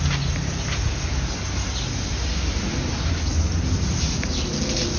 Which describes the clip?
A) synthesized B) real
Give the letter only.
B